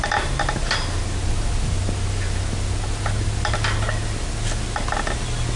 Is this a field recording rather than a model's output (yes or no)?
yes